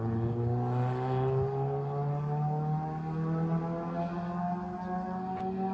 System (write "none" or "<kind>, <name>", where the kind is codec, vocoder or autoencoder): none